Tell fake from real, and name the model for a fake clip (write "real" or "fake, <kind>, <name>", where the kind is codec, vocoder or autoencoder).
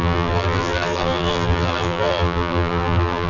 fake, vocoder, BigVGAN v2